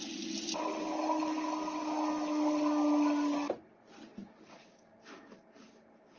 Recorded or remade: recorded